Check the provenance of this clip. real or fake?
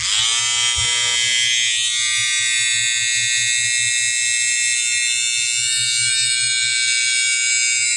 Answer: real